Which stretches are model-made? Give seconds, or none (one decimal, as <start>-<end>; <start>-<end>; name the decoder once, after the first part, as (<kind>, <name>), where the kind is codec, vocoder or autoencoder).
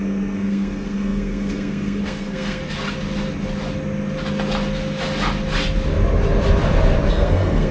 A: 0.0-2.6 (codec, SNAC); 7.1-7.7